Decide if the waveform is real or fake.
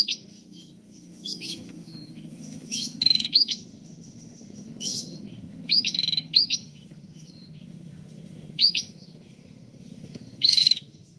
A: fake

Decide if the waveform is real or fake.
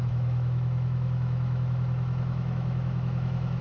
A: fake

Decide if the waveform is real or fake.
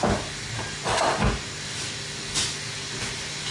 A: real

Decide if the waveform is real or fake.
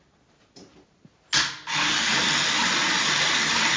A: real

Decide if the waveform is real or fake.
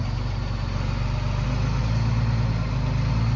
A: real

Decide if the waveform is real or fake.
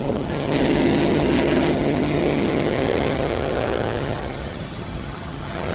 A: fake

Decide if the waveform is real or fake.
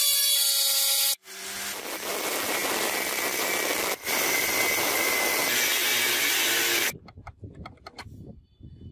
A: real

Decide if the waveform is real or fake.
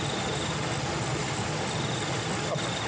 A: real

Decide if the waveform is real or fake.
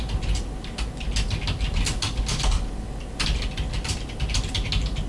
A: real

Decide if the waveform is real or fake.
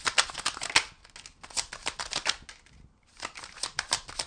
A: real